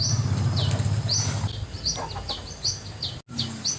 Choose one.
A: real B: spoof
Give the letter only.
A